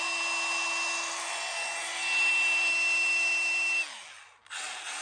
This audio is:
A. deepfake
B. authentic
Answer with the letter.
B